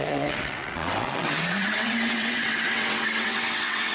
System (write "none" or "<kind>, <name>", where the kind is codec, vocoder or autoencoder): vocoder, WaveNeXt